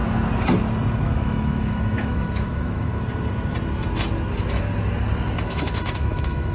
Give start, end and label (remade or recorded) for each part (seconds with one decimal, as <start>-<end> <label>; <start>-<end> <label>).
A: 0.0-1.0 recorded; 1.0-2.9 remade; 2.9-5.4 recorded; 5.4-6.5 remade